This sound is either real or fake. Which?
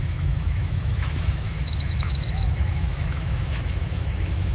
fake